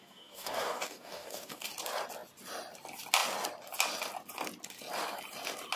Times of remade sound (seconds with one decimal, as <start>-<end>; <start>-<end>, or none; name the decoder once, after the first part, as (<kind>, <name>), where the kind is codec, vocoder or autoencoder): 0.0-1.7 (codec, DAC)